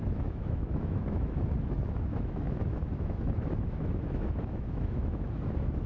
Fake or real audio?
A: fake